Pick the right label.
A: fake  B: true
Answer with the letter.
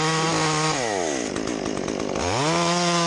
B